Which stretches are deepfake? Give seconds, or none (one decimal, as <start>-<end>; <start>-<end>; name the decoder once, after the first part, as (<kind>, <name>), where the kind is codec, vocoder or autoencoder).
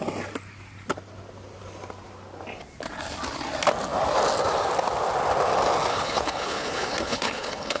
5.9-7.8 (codec, HILCodec)